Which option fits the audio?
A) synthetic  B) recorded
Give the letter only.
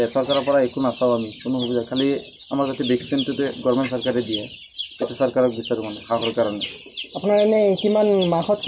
B